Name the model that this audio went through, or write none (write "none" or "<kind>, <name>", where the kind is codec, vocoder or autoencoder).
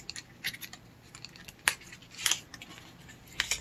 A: none